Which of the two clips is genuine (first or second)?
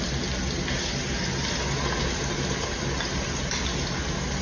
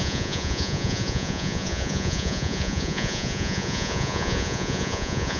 first